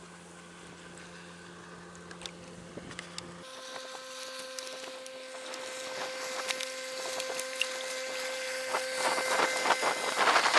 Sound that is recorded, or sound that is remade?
recorded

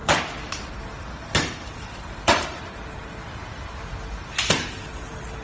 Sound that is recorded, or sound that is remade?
remade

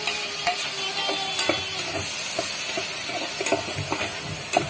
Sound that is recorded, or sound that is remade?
recorded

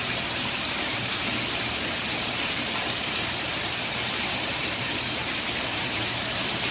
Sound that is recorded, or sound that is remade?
remade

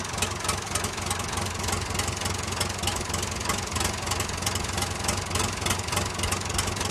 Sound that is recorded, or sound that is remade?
recorded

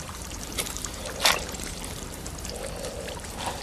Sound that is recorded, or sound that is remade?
remade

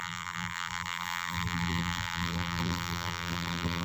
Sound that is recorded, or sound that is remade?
remade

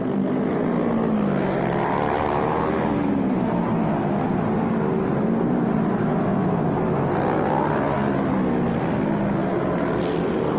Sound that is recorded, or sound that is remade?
recorded